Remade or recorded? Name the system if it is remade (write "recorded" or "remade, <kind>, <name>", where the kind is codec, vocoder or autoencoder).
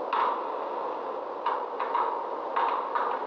recorded